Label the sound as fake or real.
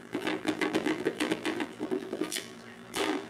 fake